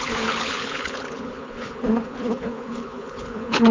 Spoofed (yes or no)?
yes